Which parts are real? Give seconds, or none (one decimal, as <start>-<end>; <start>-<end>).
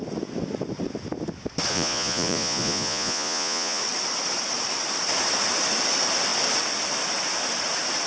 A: 0.0-1.7; 3.8-8.1